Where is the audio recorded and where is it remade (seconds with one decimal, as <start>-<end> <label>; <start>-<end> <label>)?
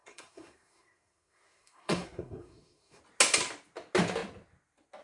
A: 0.0-3.0 remade; 3.0-5.0 recorded